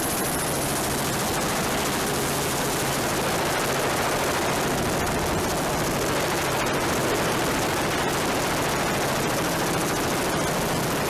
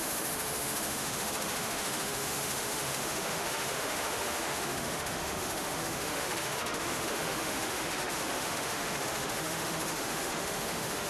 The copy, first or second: second